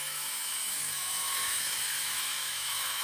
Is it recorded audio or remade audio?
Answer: remade